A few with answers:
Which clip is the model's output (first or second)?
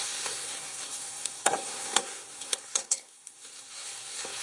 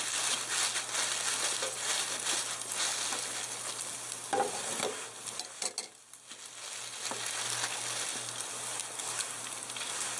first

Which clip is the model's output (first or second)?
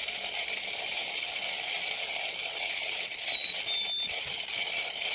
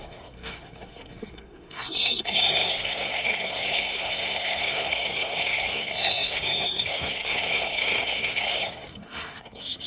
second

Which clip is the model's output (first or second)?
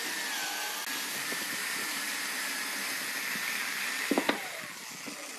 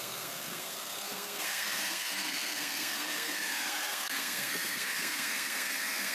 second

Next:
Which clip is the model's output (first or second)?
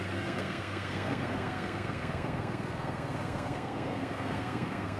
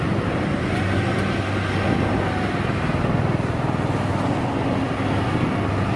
first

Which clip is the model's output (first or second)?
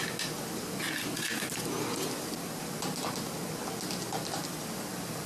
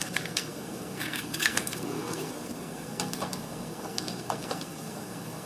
second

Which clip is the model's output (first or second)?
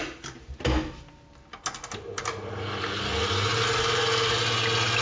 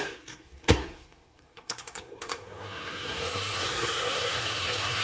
second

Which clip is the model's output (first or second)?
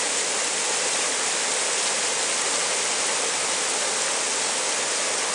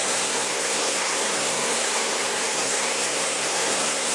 second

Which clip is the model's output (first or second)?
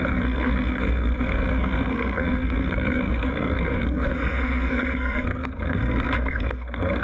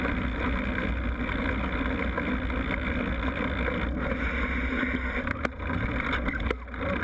first